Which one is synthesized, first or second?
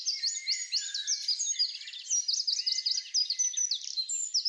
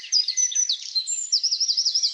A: second